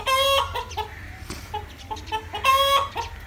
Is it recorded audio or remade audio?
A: recorded